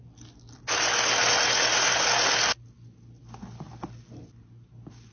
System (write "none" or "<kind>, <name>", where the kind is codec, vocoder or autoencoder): none